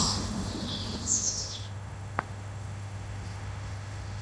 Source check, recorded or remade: remade